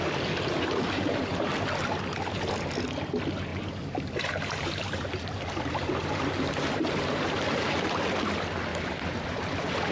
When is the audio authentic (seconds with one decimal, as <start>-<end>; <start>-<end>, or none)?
0.0-3.5; 8.0-8.7